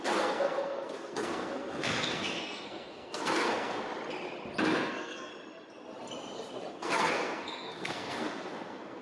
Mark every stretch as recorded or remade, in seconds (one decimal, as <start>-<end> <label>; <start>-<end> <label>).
0.0-3.9 remade; 3.9-4.6 recorded; 4.6-5.3 remade; 5.3-6.7 recorded; 6.7-9.0 remade